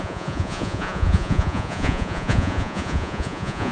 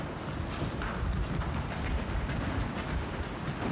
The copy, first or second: first